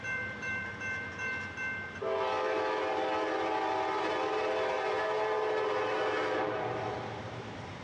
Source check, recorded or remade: remade